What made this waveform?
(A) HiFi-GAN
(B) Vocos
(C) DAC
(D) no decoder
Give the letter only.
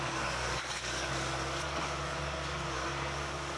C